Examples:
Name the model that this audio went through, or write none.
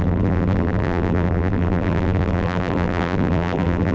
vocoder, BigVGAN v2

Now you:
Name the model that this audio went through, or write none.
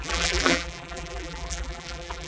vocoder, BigVGAN v2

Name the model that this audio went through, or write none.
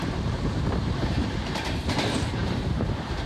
vocoder, BigVGAN v2